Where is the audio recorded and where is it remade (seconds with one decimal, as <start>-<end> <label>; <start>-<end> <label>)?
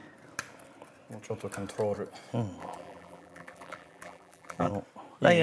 0.0-2.6 recorded; 2.6-4.7 remade; 4.7-5.4 recorded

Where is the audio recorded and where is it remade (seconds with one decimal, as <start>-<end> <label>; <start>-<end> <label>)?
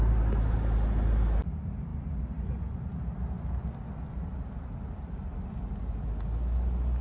0.0-7.0 recorded